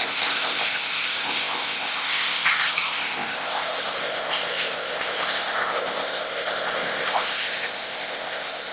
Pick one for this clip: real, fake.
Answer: fake